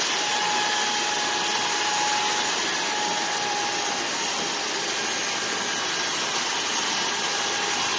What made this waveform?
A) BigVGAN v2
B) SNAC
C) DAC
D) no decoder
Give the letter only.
D